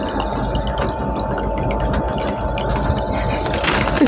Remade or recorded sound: recorded